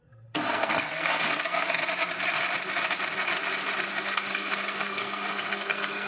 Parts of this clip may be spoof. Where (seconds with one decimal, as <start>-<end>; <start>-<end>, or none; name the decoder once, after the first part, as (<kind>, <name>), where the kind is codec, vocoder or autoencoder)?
0.0-1.8 (codec, SNAC); 4.0-6.1